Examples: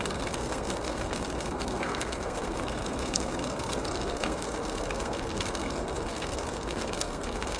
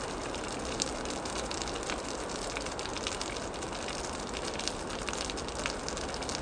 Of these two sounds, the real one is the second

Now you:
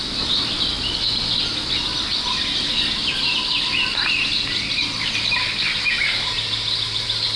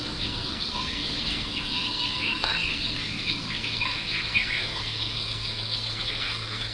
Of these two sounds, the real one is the first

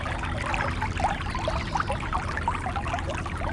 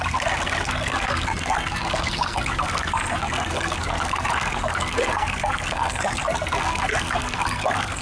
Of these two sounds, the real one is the first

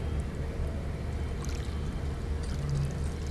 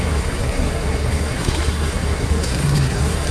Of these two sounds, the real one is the first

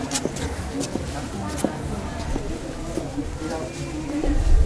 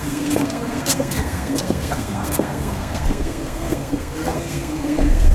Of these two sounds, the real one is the first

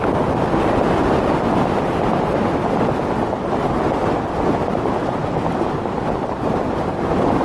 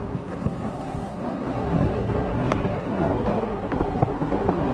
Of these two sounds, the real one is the first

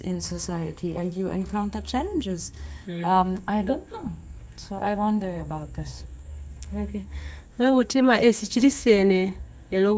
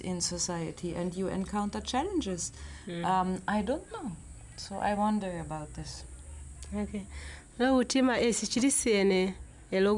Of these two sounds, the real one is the second